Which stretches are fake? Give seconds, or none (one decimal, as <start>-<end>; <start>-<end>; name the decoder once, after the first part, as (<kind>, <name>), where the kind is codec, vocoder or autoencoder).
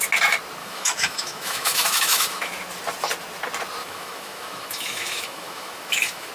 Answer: 0.6-2.5 (autoencoder, DAC-VAE); 3.8-6.3